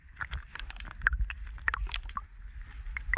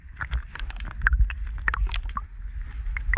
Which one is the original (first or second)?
second